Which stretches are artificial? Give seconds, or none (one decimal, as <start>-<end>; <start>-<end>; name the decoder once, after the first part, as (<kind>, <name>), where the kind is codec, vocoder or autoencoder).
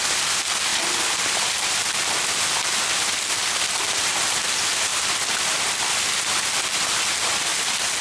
none